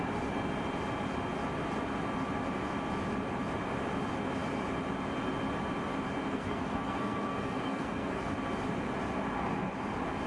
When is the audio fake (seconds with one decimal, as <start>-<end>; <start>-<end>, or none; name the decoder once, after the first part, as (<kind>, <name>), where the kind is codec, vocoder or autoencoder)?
6.3-8.2 (codec, SNAC)